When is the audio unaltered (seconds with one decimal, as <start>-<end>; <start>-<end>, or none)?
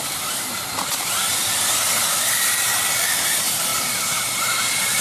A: 1.4-2.1; 2.7-3.2